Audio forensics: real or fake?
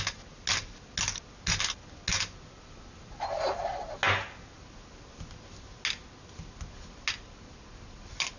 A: real